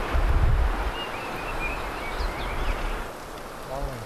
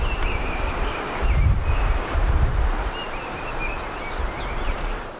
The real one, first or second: first